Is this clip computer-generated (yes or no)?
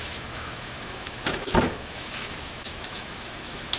yes